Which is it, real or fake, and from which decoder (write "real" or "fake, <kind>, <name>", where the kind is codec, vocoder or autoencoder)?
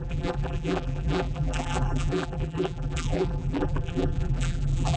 fake, vocoder, BigVGAN v2